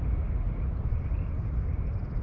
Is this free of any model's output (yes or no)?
yes